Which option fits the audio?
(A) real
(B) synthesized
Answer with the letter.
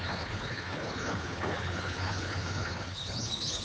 B